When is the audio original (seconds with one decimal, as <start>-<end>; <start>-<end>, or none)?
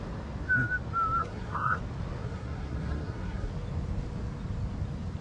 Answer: 0.0-1.2; 1.8-2.2; 3.5-5.2